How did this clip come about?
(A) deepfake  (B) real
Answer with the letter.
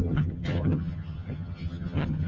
A